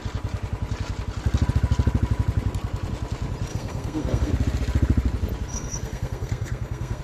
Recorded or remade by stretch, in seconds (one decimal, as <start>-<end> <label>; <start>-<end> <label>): 0.0-3.5 recorded; 3.5-4.3 remade; 4.3-5.5 recorded; 5.5-7.0 remade

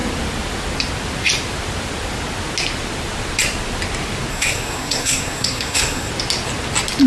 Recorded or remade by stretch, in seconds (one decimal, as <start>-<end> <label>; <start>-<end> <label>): 0.0-4.3 recorded; 4.3-6.1 remade; 6.1-7.1 recorded